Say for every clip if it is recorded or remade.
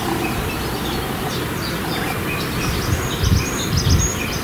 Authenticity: recorded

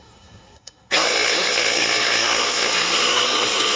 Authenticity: remade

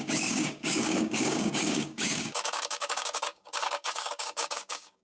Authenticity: remade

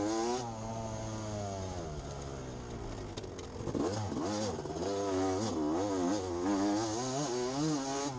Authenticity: recorded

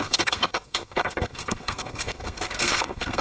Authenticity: remade